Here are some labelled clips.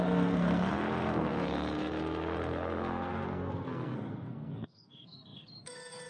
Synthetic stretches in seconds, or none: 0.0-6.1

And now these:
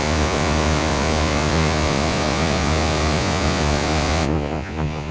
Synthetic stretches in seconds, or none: 0.0-5.1

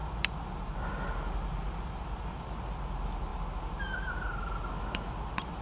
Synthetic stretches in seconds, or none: none

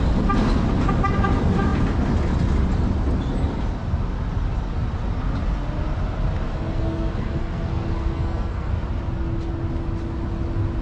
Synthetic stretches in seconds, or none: 6.5-8.7

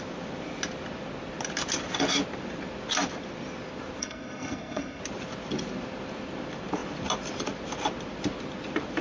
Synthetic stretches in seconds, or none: 4.0-5.0

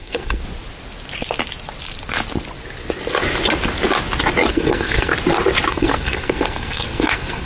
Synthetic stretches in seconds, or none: 0.0-0.4; 4.5-5.1; 5.7-7.5

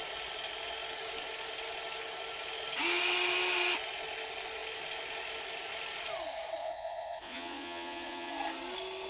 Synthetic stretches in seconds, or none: 6.6-8.3

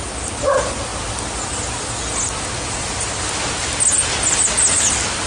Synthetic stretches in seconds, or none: none